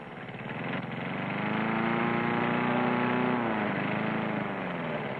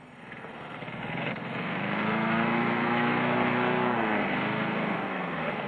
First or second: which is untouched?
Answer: first